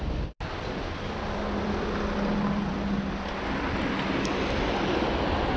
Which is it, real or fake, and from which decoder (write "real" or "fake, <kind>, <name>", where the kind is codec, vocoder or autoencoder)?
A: real